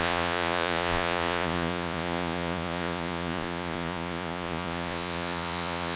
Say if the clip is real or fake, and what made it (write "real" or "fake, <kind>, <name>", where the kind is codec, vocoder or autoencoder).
fake, vocoder, Vocos